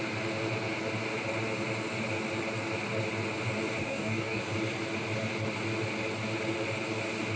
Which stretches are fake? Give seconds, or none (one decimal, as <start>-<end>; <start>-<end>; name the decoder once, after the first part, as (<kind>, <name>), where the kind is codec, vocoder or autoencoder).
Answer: 3.8-4.4 (codec, DAC)